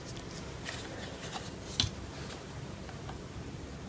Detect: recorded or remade recorded